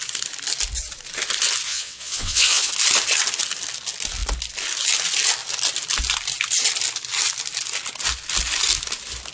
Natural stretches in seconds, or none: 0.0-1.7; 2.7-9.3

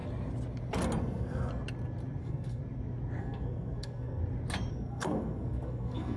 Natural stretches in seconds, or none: 0.0-1.0; 1.5-2.2; 2.6-3.2; 4.2-4.7

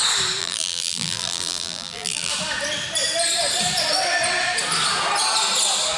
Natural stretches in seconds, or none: 0.0-0.4; 2.3-6.0